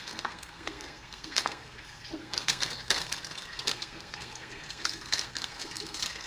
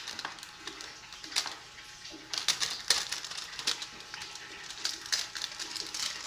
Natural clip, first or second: second